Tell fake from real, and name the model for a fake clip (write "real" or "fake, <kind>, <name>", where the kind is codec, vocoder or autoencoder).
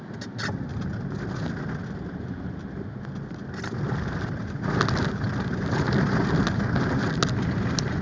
real